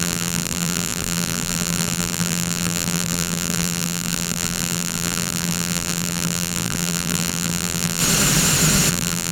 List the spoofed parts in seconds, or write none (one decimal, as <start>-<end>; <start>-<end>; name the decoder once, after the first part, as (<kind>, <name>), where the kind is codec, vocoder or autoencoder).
0.0-8.0 (vocoder, BigVGAN v2); 8.9-9.3